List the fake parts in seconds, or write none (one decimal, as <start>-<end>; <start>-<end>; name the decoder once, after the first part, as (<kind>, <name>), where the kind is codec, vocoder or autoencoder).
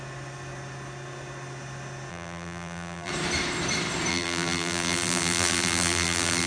2.1-3.1 (vocoder, BigVGAN v2); 4.1-6.5